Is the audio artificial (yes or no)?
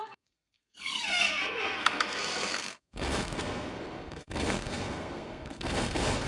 yes